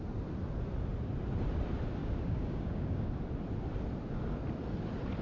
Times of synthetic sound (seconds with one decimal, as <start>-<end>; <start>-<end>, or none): 2.0-3.1